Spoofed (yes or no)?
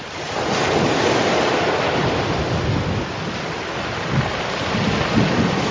no